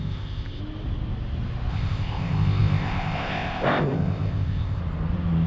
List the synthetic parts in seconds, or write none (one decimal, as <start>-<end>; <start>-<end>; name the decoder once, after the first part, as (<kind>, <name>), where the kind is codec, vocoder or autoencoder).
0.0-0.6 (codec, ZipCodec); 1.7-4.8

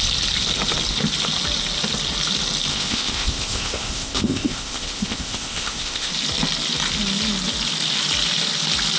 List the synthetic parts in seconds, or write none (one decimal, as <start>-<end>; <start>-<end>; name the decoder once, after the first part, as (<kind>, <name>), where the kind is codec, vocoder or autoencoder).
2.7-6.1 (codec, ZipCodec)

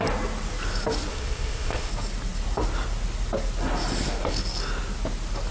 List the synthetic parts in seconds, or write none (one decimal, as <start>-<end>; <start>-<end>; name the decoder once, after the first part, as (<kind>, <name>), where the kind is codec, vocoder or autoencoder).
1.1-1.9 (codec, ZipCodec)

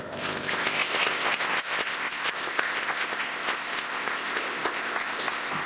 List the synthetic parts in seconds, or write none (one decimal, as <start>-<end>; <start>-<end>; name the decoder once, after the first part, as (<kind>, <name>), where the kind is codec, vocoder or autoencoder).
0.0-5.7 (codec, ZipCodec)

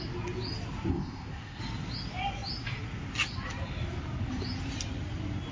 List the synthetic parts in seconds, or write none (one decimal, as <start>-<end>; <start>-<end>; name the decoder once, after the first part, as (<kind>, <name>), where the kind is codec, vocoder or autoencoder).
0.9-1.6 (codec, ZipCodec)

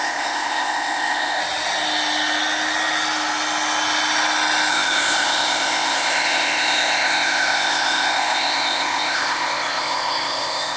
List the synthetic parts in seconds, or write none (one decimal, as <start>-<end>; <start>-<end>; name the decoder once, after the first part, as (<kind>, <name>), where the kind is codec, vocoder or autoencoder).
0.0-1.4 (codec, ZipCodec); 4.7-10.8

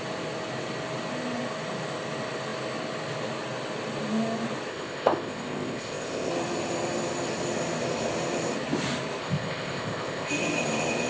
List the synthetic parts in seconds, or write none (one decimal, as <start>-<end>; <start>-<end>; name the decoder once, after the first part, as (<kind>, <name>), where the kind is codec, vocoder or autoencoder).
4.7-6.3 (codec, ZipCodec); 9.2-10.3